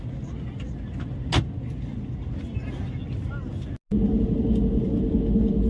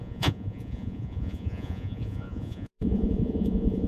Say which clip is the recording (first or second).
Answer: first